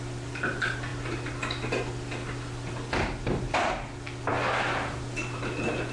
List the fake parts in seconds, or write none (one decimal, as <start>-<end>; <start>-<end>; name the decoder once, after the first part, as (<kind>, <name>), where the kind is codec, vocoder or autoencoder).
none